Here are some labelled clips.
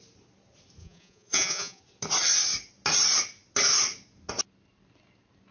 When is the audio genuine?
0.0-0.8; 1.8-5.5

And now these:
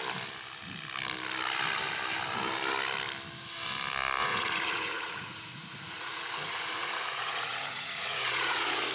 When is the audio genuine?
0.0-4.2

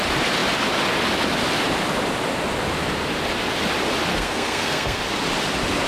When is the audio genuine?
0.0-4.1; 5.0-5.9

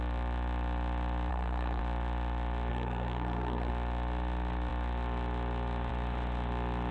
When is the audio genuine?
0.0-1.3; 1.8-2.7; 3.7-6.9

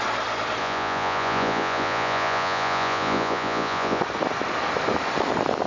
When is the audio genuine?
0.0-0.6; 4.0-5.7

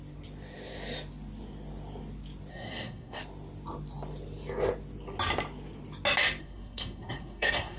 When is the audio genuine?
0.0-2.5; 3.2-6.4

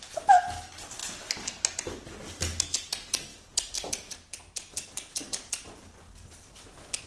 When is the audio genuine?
0.0-1.0; 1.7-3.3; 3.9-7.1